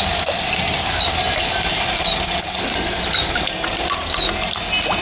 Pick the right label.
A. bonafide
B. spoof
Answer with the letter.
A